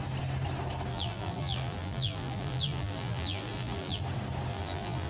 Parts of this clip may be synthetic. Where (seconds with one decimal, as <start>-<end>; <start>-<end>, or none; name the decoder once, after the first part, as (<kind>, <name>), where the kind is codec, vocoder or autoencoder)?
0.9-4.0 (vocoder, BigVGAN v2); 4.5-5.1